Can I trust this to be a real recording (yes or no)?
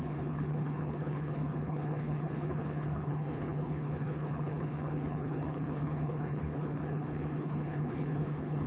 no